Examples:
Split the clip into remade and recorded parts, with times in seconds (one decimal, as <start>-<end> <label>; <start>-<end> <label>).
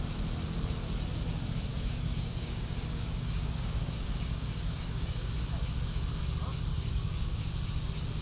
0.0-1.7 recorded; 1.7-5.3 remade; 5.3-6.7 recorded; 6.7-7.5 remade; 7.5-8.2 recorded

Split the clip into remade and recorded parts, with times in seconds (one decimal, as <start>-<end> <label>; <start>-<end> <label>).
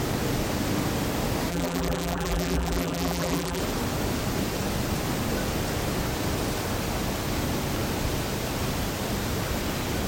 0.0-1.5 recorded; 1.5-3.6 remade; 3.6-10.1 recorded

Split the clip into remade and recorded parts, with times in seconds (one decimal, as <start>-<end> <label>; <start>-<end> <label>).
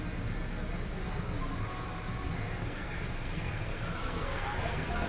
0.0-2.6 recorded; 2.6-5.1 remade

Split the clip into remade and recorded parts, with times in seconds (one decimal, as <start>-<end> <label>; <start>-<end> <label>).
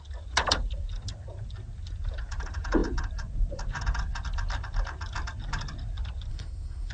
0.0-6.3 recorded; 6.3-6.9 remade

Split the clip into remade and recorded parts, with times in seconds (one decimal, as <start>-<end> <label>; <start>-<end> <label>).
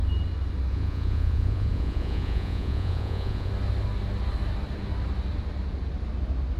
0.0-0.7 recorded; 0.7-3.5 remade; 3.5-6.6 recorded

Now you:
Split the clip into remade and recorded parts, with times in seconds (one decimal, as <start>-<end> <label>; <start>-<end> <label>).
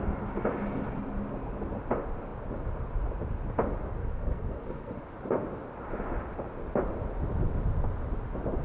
0.0-4.0 recorded; 4.0-5.0 remade; 5.0-8.6 recorded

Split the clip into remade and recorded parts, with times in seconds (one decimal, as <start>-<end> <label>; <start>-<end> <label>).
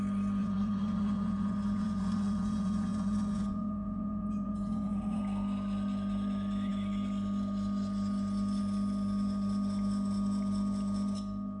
0.0-0.4 recorded; 0.4-5.2 remade; 5.2-11.6 recorded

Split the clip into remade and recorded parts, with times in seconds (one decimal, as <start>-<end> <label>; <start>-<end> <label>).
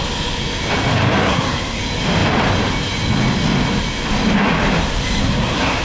0.0-1.2 recorded; 1.2-1.8 remade; 1.8-5.2 recorded; 5.2-5.8 remade